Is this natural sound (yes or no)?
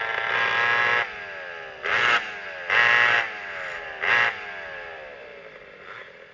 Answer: yes